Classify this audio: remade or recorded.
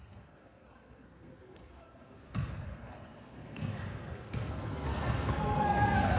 remade